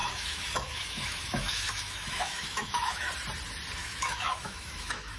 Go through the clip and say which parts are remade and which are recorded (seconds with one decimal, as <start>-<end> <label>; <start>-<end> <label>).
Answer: 0.0-3.1 remade; 3.1-3.8 recorded; 3.8-5.2 remade